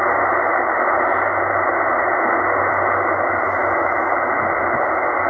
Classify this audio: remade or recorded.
recorded